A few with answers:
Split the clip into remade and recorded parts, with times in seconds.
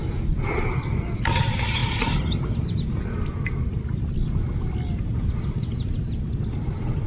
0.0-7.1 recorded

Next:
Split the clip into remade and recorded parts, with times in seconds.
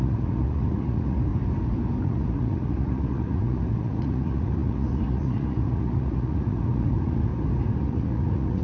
0.0-1.3 remade; 1.3-2.0 recorded; 2.0-7.3 remade; 7.3-7.8 recorded; 7.8-8.6 remade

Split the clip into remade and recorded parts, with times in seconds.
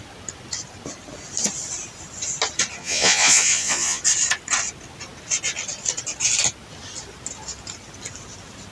0.0-2.8 recorded; 2.8-4.0 remade; 4.0-8.7 recorded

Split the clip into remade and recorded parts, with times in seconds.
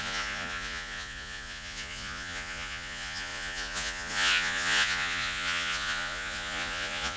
0.0-7.2 remade